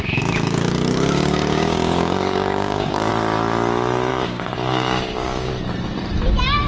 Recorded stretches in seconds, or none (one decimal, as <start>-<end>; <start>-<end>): 3.1-4.1; 5.5-6.7